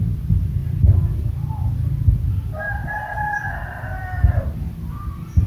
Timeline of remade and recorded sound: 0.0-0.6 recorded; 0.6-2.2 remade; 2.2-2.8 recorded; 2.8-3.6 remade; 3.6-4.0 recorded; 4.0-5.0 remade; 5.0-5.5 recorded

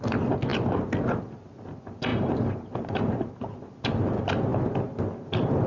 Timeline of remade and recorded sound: 0.0-2.1 recorded; 2.1-3.5 remade; 3.5-5.7 recorded

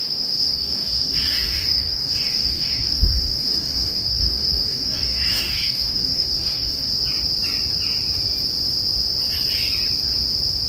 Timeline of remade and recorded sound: 0.0-6.9 remade; 6.9-10.7 recorded

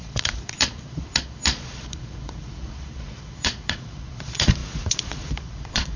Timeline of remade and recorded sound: 0.0-6.0 remade